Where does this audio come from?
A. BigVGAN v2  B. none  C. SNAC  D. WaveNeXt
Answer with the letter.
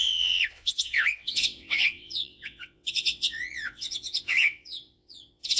D